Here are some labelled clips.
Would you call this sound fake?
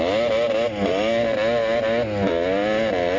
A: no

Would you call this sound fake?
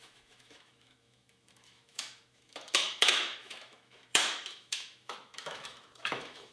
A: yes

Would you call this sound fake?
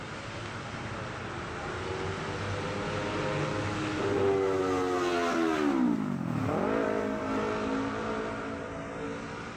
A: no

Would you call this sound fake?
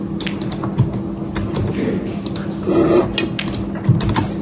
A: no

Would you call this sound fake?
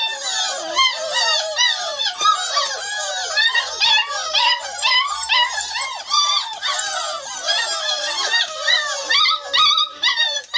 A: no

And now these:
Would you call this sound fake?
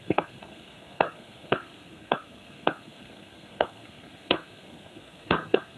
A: yes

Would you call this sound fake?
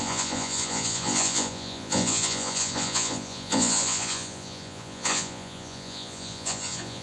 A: yes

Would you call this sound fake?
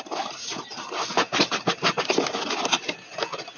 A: no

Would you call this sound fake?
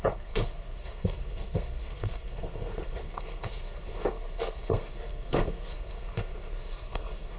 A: yes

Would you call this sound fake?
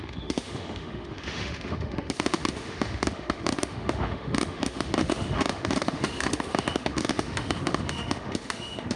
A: yes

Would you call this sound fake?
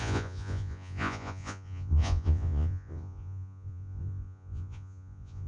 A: yes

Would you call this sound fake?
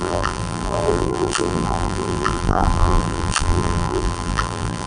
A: yes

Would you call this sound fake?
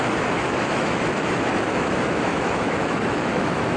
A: yes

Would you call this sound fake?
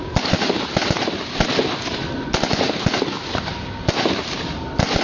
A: no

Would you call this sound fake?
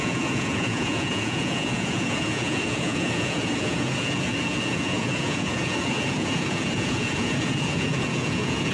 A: yes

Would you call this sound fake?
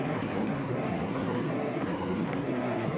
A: yes